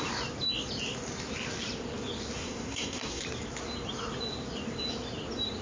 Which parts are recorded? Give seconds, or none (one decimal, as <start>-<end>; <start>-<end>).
0.0-2.4; 3.2-5.6